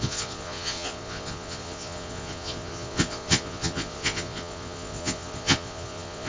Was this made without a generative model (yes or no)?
no